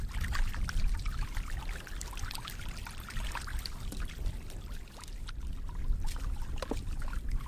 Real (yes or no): yes